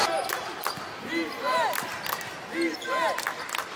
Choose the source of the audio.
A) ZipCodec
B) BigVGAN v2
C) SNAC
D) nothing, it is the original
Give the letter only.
D